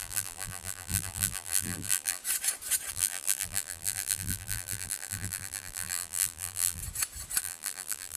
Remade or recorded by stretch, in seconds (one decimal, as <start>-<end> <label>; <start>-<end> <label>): 0.0-2.2 remade; 2.2-2.9 recorded; 2.9-6.8 remade; 6.8-7.4 recorded; 7.4-8.2 remade